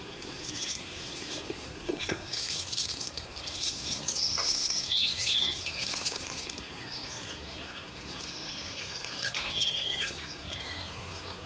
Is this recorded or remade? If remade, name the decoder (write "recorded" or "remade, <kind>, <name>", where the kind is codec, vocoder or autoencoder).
remade, codec, SNAC